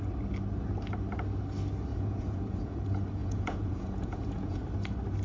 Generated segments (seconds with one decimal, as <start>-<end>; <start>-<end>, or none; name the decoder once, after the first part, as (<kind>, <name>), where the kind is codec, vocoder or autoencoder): 1.9-2.8 (vocoder, Vocos); 3.2-4.6